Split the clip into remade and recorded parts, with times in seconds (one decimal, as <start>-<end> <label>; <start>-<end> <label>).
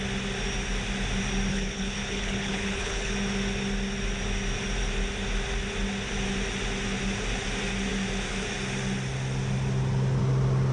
0.0-1.5 recorded; 1.5-3.1 remade; 3.1-10.7 recorded